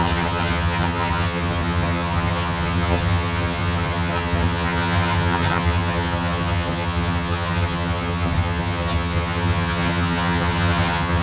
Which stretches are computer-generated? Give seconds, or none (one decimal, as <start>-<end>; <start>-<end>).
0.0-11.2